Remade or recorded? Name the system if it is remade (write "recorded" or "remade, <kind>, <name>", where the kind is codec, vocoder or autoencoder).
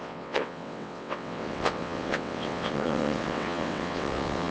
remade, vocoder, WaveNeXt